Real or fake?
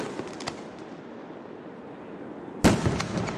real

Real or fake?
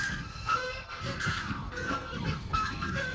fake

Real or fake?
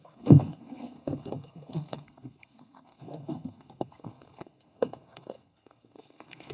fake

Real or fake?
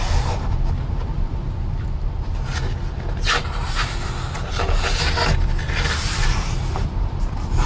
real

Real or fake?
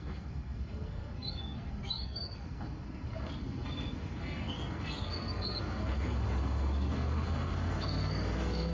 fake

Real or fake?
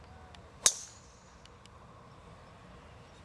real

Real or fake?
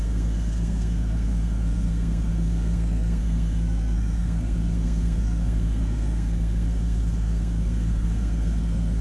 fake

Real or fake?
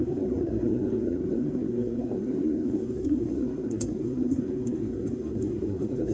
fake